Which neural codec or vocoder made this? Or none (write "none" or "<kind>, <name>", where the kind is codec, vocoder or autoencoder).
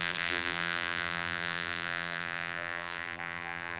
vocoder, BigVGAN v2